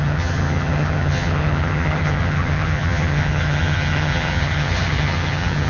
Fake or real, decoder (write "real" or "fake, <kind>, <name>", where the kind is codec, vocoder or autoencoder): fake, vocoder, HiFi-GAN